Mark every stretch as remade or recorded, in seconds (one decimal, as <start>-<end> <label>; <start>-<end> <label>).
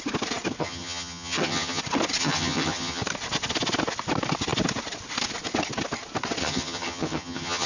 0.0-0.6 recorded; 0.6-1.8 remade; 1.8-2.2 recorded; 2.2-3.0 remade; 3.0-6.4 recorded; 6.4-7.7 remade